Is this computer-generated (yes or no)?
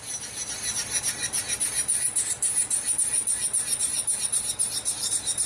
no